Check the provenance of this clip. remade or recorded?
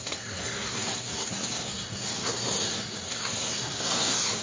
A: remade